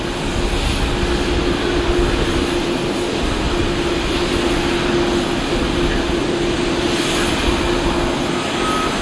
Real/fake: real